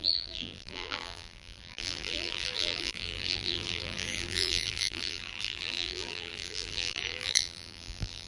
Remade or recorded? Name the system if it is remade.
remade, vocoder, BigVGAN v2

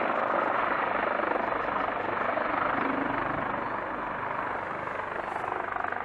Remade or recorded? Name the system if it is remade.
recorded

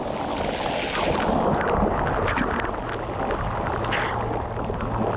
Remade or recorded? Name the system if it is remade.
recorded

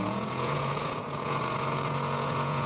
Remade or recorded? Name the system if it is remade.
remade, vocoder, Vocos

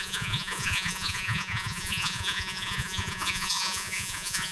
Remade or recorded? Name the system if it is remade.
remade, vocoder, Vocos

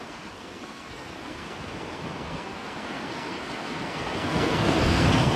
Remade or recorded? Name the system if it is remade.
remade, codec, SNAC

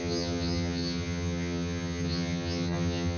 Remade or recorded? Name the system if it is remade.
remade, vocoder, HiFi-GAN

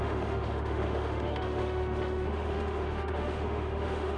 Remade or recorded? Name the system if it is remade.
remade, autoencoder, DAC-VAE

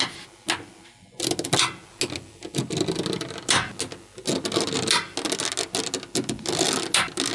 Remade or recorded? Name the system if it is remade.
recorded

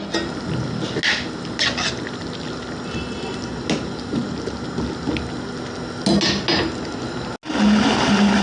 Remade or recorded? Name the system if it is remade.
recorded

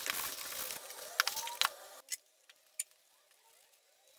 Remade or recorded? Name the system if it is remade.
recorded